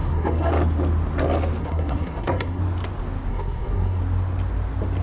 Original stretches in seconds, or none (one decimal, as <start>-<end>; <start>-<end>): 0.5-1.6; 2.6-3.3; 4.0-5.0